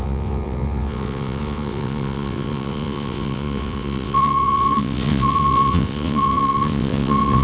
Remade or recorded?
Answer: remade